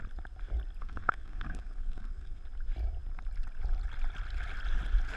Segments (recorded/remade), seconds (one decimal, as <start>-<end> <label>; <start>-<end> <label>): 0.0-0.8 recorded; 0.8-2.4 remade; 2.4-5.2 recorded